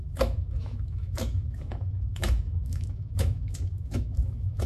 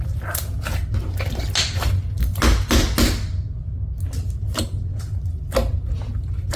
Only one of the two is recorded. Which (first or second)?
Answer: second